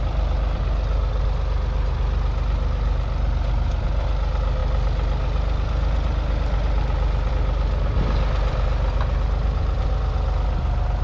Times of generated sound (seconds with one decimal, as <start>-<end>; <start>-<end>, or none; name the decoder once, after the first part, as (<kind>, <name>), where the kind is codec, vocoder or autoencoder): none